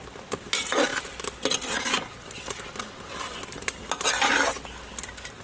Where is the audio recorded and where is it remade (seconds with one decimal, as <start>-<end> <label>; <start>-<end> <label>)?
0.0-5.4 recorded